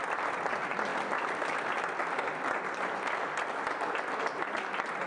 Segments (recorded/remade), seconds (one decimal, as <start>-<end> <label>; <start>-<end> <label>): 0.0-5.1 recorded